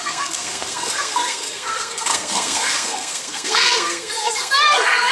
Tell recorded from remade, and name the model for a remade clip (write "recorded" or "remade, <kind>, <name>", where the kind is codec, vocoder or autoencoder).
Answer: remade, codec, SNAC